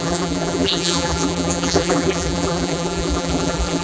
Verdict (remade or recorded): remade